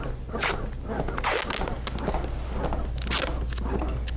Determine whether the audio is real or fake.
real